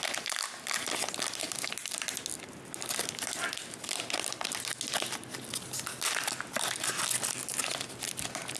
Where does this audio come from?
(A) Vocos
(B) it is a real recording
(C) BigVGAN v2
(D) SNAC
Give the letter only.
B